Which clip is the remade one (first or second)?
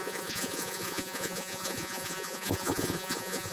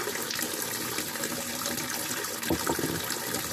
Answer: first